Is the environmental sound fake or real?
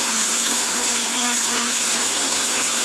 fake